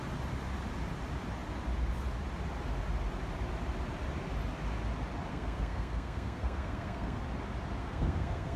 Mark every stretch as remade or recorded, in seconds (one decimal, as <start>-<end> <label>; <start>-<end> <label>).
0.0-5.3 recorded; 5.3-7.2 remade; 7.2-7.8 recorded; 7.8-8.6 remade